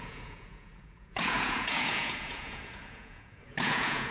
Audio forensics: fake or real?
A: fake